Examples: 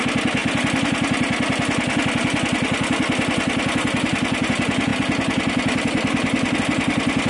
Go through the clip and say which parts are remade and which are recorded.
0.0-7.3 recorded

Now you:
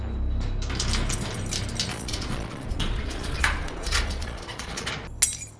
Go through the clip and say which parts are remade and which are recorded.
0.0-1.9 recorded; 1.9-4.9 remade; 4.9-5.6 recorded

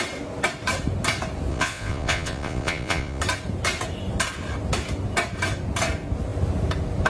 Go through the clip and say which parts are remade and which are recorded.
0.0-1.5 recorded; 1.5-3.2 remade; 3.2-7.1 recorded

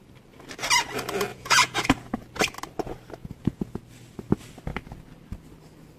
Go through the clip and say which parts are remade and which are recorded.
0.0-1.3 recorded; 1.3-2.2 remade; 2.2-3.2 recorded; 3.2-3.8 remade; 3.8-6.0 recorded

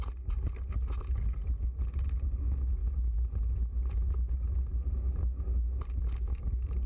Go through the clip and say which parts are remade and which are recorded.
0.0-6.9 recorded